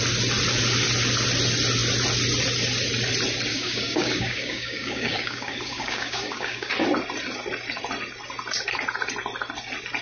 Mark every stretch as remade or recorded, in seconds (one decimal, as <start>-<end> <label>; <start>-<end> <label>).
0.0-3.5 recorded; 3.5-6.7 remade; 6.7-10.0 recorded